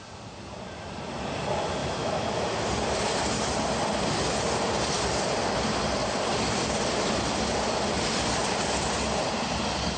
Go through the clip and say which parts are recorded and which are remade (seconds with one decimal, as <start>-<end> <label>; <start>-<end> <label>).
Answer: 0.0-1.8 recorded; 1.8-2.4 remade; 2.4-10.0 recorded